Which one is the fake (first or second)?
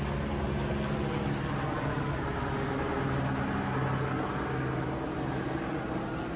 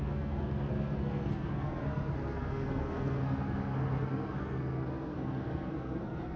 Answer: second